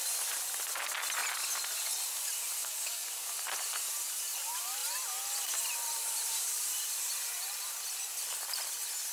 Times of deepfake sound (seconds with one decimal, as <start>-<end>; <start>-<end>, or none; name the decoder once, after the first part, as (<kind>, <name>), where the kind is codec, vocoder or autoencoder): 2.6-3.3 (codec, DAC)